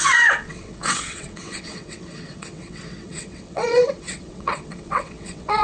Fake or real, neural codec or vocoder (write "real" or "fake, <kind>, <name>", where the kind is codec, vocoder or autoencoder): fake, vocoder, WaveNeXt